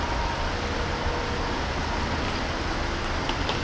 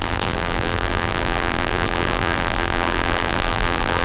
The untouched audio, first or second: first